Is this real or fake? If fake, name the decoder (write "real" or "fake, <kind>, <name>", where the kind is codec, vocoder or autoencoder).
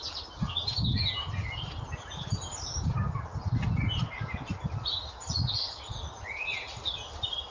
real